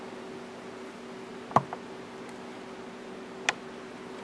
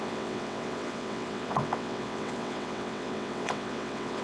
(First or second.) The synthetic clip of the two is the second